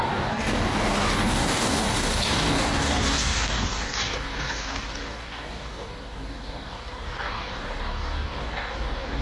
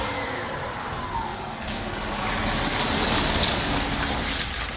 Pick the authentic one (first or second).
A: second